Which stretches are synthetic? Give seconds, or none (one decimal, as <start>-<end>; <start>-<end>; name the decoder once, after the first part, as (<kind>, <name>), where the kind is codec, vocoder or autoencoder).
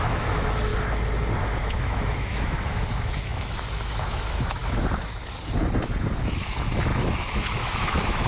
0.0-0.7 (autoencoder, DAC-VAE); 1.6-4.6; 6.4-8.3